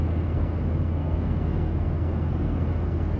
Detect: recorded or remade remade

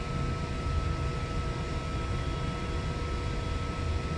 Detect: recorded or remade recorded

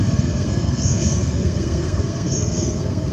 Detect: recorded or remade remade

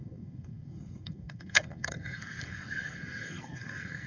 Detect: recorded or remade remade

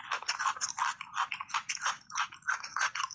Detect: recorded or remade recorded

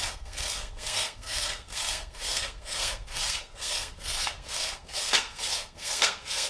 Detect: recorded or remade remade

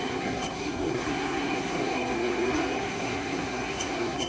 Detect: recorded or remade remade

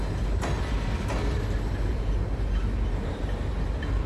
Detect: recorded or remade recorded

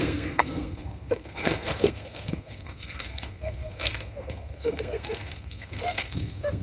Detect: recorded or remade remade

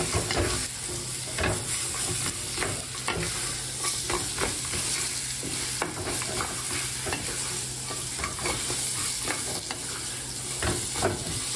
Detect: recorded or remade recorded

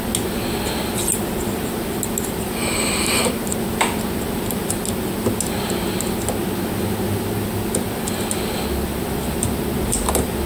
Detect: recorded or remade recorded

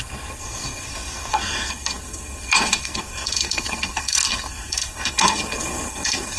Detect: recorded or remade remade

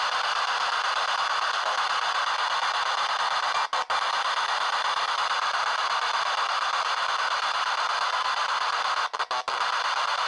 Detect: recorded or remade recorded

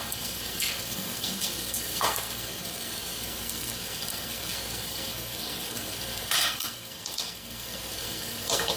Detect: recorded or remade remade